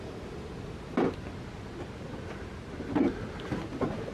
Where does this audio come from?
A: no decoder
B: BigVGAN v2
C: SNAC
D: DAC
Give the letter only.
A